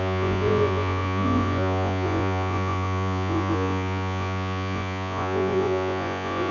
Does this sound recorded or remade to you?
remade